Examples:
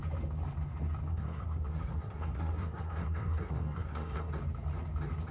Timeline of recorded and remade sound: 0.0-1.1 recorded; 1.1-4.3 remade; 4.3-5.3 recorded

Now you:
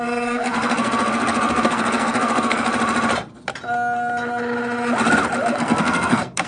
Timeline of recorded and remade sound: 0.0-2.7 remade; 2.7-5.5 recorded; 5.5-6.5 remade

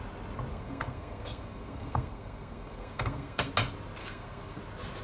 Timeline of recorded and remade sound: 0.0-0.5 recorded; 0.5-3.5 remade; 3.5-4.0 recorded; 4.0-4.6 remade; 4.6-5.0 recorded

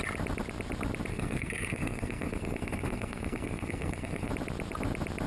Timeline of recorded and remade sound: 0.0-1.1 recorded; 1.1-4.3 remade; 4.3-5.3 recorded

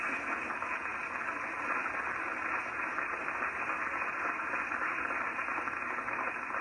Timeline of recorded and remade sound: 0.0-6.6 recorded